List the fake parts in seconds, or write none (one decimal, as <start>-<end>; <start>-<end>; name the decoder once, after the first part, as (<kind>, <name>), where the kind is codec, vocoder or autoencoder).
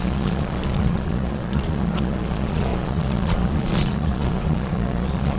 0.0-5.4 (vocoder, Vocos)